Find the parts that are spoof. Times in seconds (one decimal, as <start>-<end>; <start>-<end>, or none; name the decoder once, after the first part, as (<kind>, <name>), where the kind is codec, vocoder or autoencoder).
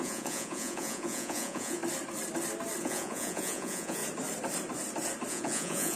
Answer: 0.0-1.8 (vocoder, Vocos); 2.8-4.0; 5.3-6.0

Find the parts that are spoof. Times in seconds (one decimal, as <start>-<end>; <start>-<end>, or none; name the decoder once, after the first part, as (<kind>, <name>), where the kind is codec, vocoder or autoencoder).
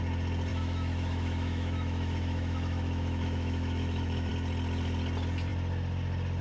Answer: 0.5-4.3 (autoencoder, DAC-VAE)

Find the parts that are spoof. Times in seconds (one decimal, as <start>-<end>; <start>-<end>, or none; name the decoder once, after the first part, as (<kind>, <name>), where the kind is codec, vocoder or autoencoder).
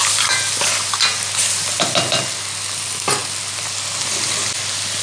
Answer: none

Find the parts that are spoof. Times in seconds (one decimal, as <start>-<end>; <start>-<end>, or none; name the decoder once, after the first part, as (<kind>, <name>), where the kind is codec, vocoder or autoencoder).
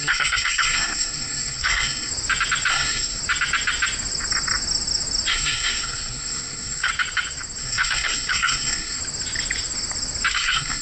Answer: 0.0-2.1 (codec, SNAC); 2.7-3.2; 5.3-6.9; 7.6-9.0; 10.3-10.8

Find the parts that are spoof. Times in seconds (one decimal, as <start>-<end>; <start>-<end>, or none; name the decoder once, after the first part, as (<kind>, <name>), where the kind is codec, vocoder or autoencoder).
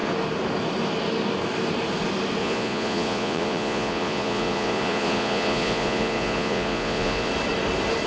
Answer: 2.4-7.3 (vocoder, Vocos)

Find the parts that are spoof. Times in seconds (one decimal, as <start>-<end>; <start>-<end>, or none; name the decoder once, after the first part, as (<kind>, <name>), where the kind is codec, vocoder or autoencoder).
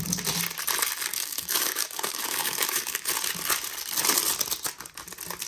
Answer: 1.1-3.1 (codec, DAC)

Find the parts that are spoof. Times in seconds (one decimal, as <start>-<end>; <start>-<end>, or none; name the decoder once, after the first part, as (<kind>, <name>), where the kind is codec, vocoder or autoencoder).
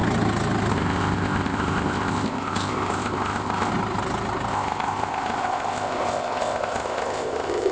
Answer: 0.7-3.7 (codec, ZipCodec); 4.5-7.7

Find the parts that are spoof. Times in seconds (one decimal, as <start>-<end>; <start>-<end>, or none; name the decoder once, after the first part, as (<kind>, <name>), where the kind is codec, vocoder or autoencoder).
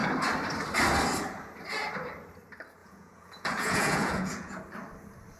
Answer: 2.8-4.6 (vocoder, Vocos)